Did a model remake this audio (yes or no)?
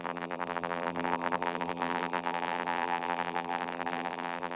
yes